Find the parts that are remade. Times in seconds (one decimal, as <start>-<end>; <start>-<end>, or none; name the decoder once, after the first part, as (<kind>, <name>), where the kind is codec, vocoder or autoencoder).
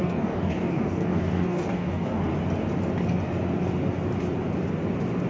0.0-2.3 (codec, DAC)